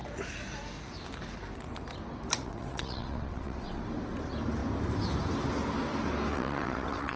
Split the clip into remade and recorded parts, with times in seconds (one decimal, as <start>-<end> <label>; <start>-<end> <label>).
0.0-2.4 recorded; 2.4-3.8 remade; 3.8-6.3 recorded; 6.3-7.2 remade